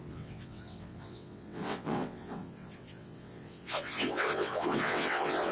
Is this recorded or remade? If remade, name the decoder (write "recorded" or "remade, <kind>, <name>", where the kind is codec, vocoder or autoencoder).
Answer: remade, vocoder, WaveNeXt